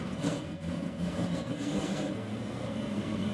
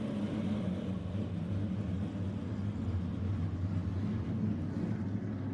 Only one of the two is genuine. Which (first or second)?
second